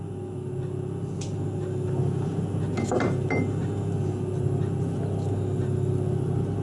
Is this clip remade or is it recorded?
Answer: recorded